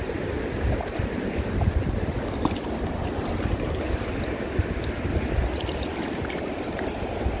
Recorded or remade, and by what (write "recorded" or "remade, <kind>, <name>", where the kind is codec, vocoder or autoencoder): recorded